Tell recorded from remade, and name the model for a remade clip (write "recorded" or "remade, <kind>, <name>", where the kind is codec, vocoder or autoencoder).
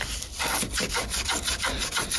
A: recorded